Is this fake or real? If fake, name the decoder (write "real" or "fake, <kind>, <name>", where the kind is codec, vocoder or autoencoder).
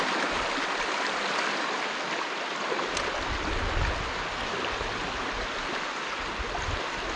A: real